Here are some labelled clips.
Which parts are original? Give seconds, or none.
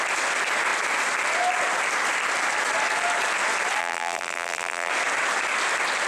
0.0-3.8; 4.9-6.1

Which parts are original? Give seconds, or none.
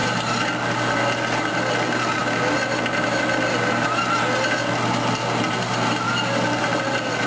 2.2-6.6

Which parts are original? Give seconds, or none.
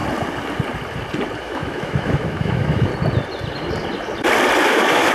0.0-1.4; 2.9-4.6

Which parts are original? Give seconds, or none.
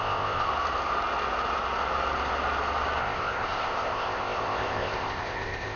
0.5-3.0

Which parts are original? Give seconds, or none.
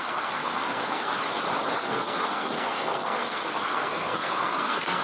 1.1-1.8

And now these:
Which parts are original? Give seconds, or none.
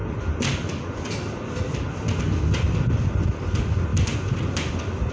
0.0-3.9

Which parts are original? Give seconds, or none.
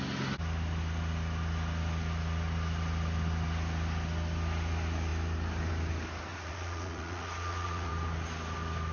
0.0-6.3; 7.9-8.9